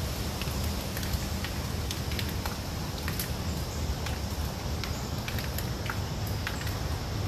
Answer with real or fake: real